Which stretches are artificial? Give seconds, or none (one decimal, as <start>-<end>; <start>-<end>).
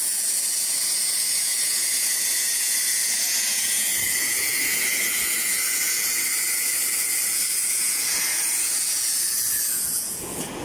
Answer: 0.0-10.6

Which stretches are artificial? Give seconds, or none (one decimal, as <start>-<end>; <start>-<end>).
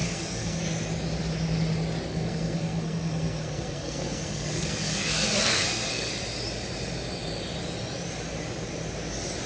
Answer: 0.0-0.6; 2.1-6.1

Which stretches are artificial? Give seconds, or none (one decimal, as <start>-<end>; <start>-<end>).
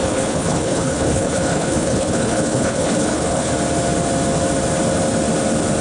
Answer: 0.0-3.5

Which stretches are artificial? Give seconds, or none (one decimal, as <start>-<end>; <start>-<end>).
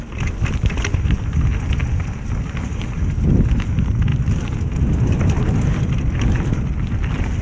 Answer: none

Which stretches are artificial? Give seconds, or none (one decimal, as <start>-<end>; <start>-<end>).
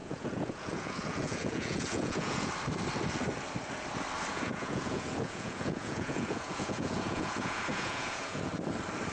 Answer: 0.0-2.5; 4.3-8.5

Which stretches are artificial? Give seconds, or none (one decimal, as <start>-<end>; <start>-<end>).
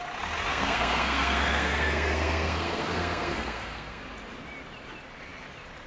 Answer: 0.5-4.0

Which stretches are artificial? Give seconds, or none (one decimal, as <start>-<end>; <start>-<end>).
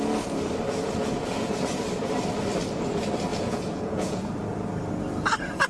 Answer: 1.0-1.6; 3.3-4.3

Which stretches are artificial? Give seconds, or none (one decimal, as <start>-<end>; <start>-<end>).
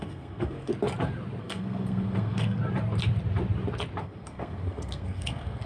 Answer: 0.0-0.7; 1.4-2.6; 4.0-5.7